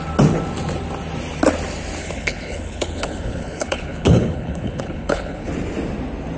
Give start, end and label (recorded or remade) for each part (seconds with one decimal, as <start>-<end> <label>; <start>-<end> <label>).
0.0-2.0 recorded; 2.0-5.5 remade; 5.5-6.4 recorded